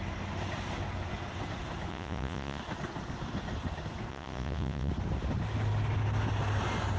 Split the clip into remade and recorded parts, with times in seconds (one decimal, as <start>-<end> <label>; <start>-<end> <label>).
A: 0.0-1.9 recorded; 1.9-2.6 remade; 2.6-4.1 recorded; 4.1-4.9 remade; 4.9-7.0 recorded